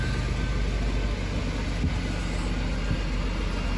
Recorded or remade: recorded